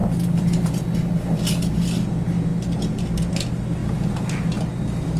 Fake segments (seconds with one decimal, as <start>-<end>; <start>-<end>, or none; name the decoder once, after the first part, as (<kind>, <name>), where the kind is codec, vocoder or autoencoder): none